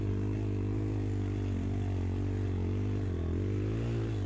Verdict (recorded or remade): recorded